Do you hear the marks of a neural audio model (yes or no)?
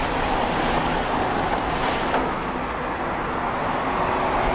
no